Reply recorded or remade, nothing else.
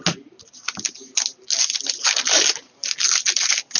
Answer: recorded